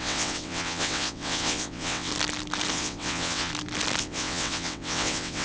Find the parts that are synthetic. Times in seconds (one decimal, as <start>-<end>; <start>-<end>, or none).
0.0-2.1; 2.7-3.5; 4.0-5.4